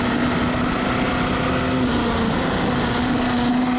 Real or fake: real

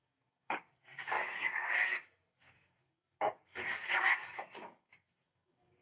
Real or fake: fake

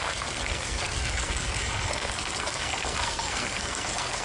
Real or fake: fake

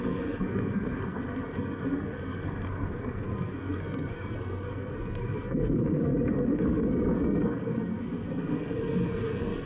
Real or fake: fake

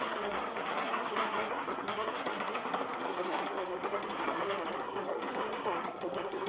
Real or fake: fake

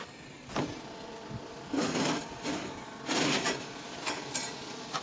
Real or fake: real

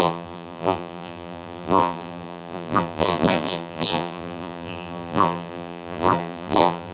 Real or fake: fake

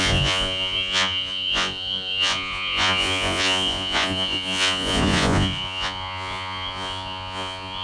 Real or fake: fake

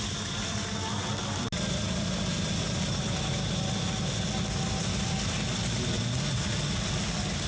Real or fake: real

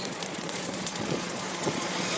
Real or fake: fake